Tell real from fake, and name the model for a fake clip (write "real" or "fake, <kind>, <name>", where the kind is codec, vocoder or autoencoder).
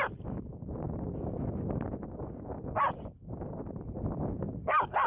real